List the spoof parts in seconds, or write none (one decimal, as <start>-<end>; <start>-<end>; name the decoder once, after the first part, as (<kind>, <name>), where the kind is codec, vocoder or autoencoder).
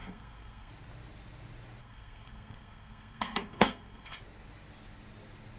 0.0-0.7 (codec, SNAC); 1.8-4.2